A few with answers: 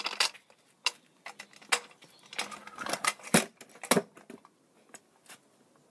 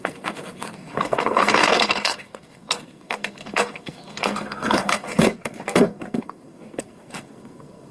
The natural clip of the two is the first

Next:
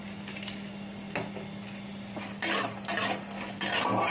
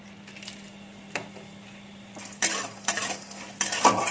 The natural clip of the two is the first